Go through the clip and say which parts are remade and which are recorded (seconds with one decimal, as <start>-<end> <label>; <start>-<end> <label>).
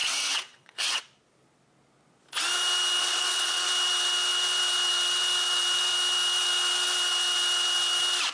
0.0-1.0 remade; 1.0-3.0 recorded; 3.0-3.7 remade; 3.7-8.3 recorded